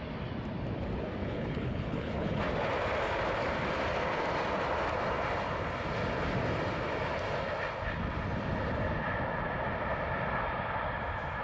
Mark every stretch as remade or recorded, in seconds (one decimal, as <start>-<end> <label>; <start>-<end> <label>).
0.0-1.2 recorded; 1.2-2.4 remade; 2.4-11.4 recorded